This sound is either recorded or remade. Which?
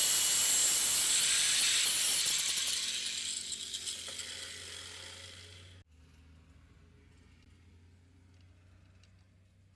recorded